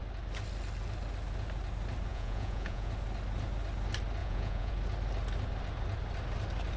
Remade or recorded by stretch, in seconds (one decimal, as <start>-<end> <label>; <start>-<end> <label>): 0.0-2.1 recorded; 2.1-2.9 remade; 2.9-4.2 recorded; 4.2-4.7 remade; 4.7-6.8 recorded